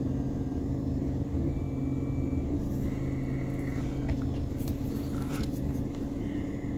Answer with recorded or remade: recorded